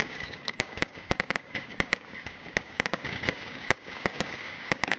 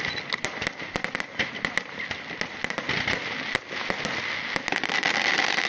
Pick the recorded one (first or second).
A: second